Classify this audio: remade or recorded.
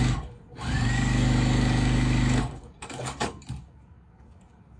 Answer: remade